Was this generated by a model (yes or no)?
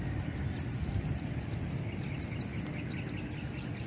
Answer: no